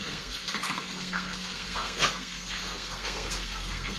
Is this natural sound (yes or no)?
no